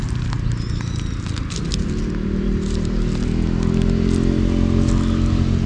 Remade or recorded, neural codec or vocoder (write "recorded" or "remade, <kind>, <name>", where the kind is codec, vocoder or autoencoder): recorded